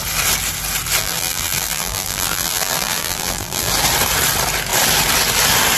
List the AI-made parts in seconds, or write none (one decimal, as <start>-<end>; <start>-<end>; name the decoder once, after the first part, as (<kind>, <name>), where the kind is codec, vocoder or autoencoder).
1.0-3.7 (vocoder, BigVGAN v2)